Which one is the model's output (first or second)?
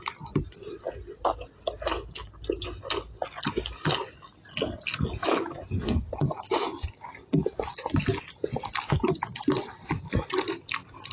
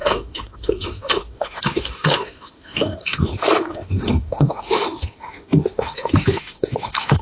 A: second